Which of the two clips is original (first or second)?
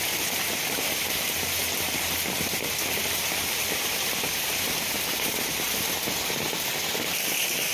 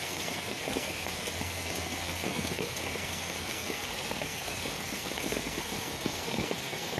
first